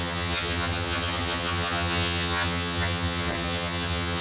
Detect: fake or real fake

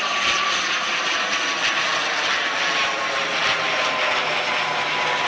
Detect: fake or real real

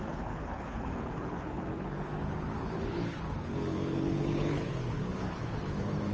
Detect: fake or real fake